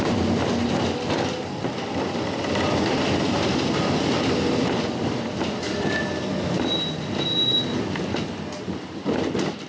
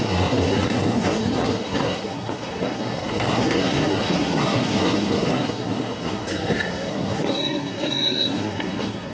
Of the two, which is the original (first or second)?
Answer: first